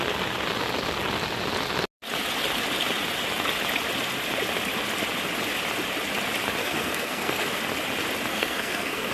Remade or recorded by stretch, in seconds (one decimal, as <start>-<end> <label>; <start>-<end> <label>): 0.0-6.6 recorded; 6.6-7.6 remade; 7.6-8.3 recorded; 8.3-9.1 remade